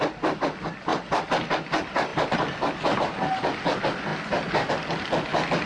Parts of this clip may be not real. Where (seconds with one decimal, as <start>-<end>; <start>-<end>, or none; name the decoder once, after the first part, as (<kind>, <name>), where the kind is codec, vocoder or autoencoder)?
none